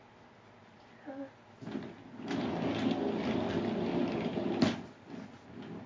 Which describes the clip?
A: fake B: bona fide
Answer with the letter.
B